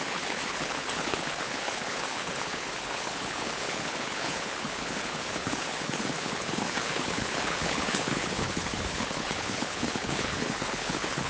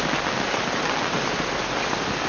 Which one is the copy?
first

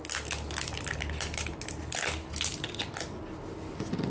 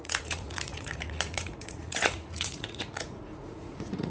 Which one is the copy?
second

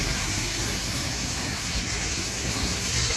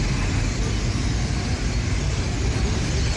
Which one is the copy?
first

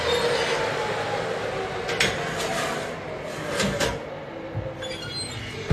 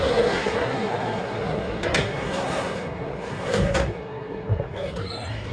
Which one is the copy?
second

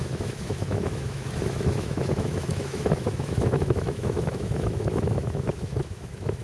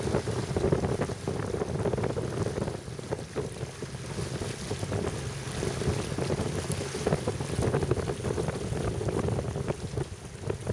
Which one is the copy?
first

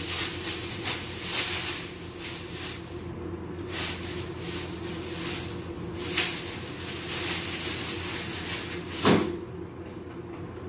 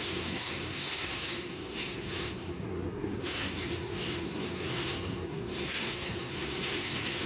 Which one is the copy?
second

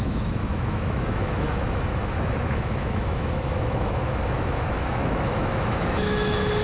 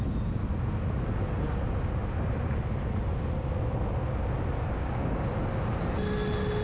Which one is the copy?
first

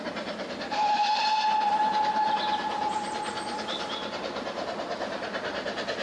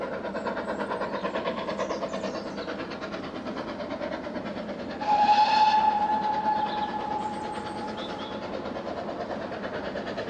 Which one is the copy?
first